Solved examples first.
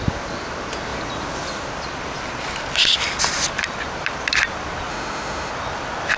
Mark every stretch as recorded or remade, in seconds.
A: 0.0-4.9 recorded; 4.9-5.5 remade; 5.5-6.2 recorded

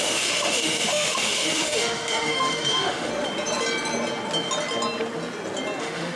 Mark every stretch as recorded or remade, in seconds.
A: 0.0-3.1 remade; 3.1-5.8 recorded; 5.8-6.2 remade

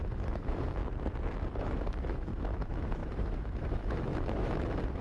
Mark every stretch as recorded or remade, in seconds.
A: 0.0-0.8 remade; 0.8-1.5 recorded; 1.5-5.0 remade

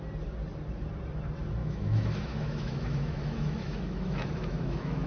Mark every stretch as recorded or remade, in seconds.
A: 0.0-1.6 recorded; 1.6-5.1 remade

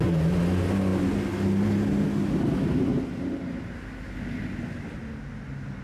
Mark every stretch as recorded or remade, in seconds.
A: 0.0-5.8 recorded